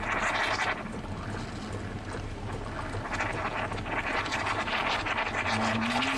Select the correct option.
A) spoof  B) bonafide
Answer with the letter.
B